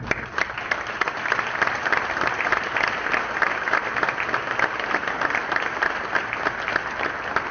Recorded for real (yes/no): yes